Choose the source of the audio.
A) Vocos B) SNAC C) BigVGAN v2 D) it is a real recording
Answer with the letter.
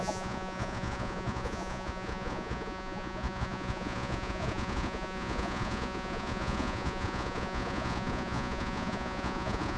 A